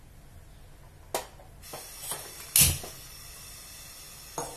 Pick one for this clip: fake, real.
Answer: real